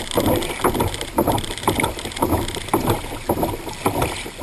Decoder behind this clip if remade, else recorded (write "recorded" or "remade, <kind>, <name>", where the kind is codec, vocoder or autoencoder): recorded